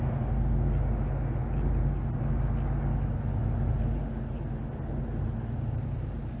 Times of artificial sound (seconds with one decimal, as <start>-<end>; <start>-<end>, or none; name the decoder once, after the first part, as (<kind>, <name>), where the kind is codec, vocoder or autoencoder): none